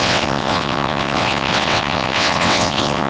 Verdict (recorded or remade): remade